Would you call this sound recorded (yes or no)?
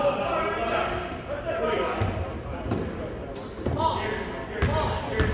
yes